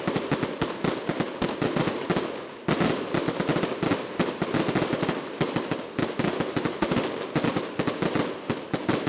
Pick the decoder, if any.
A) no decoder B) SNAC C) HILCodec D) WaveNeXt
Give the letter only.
A